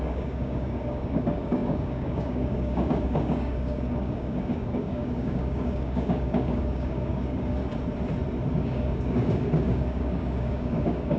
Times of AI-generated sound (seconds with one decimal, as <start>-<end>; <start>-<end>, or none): 0.0-7.6; 8.5-11.2